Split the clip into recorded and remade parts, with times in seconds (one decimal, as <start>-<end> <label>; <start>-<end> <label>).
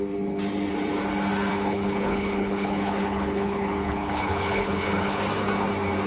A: 0.0-1.5 recorded; 1.5-5.2 remade; 5.2-6.1 recorded